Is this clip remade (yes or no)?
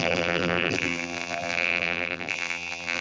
yes